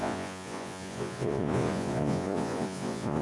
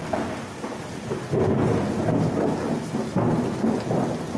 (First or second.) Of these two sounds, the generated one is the first